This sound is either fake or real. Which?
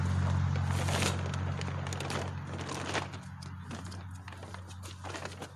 real